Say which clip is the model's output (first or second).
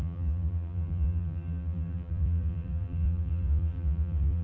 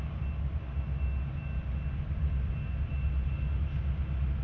first